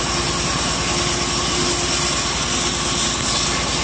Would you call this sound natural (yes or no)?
yes